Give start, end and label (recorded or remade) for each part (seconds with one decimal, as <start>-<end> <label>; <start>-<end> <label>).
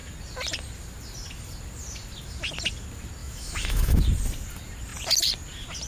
0.0-3.2 recorded; 3.2-4.0 remade; 4.0-5.9 recorded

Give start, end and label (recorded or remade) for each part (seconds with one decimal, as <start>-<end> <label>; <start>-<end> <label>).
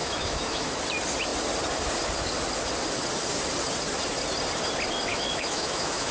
0.0-0.7 remade; 0.7-5.1 recorded; 5.1-6.1 remade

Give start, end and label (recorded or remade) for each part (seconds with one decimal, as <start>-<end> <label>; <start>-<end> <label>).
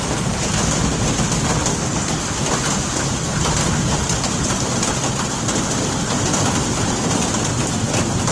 0.0-1.7 recorded; 1.7-2.2 remade; 2.2-8.3 recorded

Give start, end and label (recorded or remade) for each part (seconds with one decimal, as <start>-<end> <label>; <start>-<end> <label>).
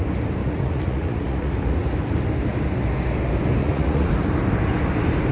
0.0-0.4 recorded; 0.4-1.5 remade; 1.5-3.6 recorded; 3.6-4.1 remade; 4.1-5.3 recorded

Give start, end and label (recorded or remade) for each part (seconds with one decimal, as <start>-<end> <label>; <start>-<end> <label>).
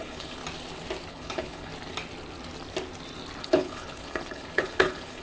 0.0-0.4 remade; 0.4-1.1 recorded; 1.1-1.7 remade; 1.7-3.4 recorded; 3.4-5.2 remade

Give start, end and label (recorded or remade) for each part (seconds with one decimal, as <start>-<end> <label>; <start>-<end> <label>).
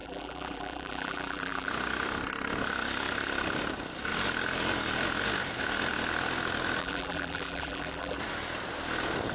0.0-1.7 remade; 1.7-6.8 recorded; 6.8-8.2 remade; 8.2-9.3 recorded